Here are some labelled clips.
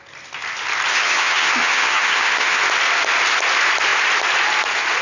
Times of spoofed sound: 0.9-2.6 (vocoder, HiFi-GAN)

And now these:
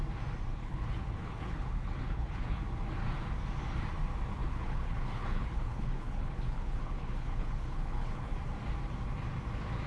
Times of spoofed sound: 0.5-2.6 (codec, HILCodec); 4.4-8.3

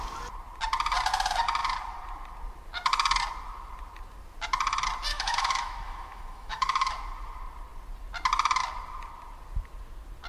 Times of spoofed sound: 5.1-6.9 (autoencoder, DAC-VAE)

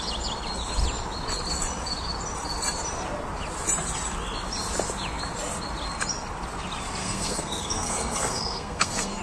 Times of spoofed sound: 7.0-9.2 (codec, SNAC)